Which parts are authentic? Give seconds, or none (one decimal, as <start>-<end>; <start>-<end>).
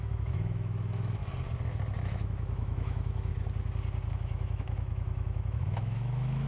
1.2-2.0; 3.3-4.1